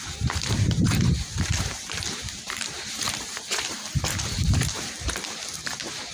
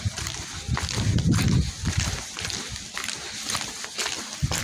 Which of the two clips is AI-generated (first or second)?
first